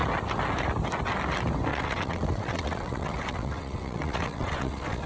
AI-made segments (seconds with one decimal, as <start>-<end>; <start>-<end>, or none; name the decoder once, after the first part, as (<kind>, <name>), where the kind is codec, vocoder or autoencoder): 1.7-5.1 (vocoder, WaveNeXt)